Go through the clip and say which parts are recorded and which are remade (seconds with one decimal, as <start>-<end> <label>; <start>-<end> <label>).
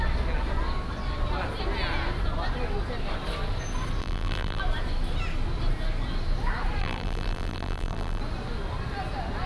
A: 0.0-4.0 recorded; 4.0-4.6 remade; 4.6-6.8 recorded; 6.8-8.2 remade; 8.2-9.5 recorded